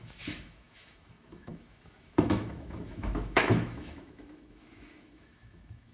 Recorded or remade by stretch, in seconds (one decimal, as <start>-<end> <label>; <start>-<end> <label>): 0.0-5.9 remade